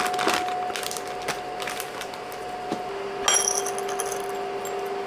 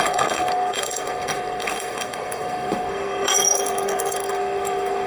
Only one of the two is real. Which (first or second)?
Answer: first